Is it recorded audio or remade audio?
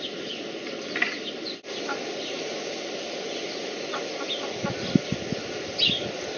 recorded